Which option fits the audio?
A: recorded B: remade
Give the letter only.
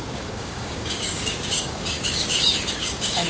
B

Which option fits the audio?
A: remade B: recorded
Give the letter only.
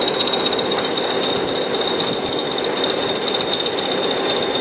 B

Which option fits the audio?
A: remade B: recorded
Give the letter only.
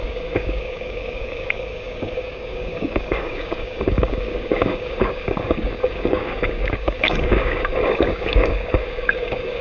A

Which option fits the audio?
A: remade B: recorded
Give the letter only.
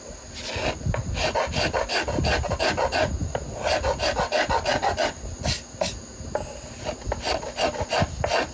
B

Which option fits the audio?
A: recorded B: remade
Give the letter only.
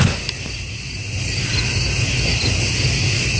A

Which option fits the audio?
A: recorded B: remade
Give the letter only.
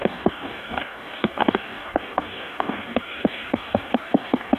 B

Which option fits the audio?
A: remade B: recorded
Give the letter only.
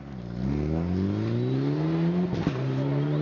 B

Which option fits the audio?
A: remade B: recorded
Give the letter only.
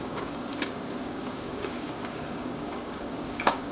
A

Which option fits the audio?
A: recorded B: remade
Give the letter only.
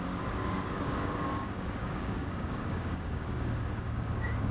B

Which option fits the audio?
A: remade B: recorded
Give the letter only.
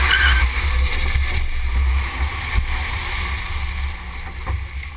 B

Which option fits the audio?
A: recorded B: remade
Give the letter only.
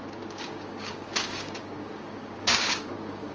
B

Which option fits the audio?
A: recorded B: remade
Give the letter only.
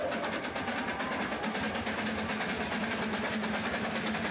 A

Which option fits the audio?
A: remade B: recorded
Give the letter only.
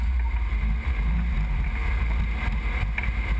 B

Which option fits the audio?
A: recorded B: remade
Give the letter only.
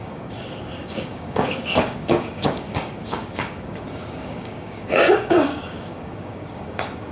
B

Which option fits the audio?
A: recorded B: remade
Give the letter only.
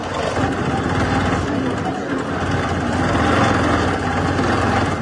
A